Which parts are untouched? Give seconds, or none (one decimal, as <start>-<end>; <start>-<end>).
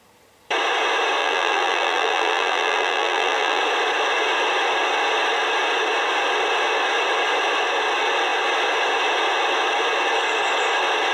0.0-1.2; 3.6-11.1